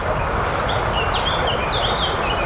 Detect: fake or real real